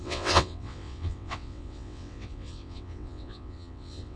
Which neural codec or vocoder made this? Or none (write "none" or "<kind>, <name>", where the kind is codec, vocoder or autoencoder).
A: vocoder, WaveNeXt